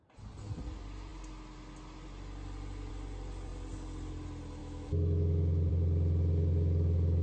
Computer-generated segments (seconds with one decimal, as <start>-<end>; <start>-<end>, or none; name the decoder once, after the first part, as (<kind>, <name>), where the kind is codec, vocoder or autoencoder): 4.6-5.7 (autoencoder, DAC-VAE)

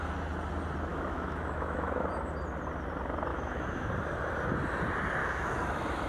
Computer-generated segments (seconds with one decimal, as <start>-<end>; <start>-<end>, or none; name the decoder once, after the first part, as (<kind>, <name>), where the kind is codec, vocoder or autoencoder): 0.9-2.1 (autoencoder, DAC-VAE); 3.3-3.9; 5.2-6.1

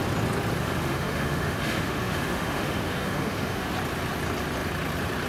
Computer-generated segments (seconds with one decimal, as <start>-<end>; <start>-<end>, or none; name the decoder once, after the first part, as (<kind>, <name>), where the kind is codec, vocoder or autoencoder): 0.6-3.7 (autoencoder, DAC-VAE)